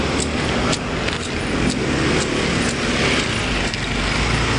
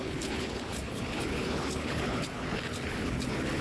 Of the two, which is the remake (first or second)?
second